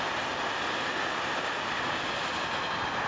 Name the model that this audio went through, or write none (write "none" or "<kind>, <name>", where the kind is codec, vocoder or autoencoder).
none